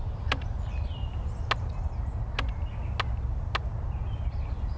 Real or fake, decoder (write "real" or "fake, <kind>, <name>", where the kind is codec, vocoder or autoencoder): real